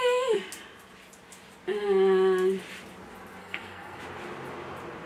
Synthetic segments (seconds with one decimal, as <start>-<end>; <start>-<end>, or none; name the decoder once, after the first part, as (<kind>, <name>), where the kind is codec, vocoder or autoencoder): 3.4-4.0 (codec, SNAC)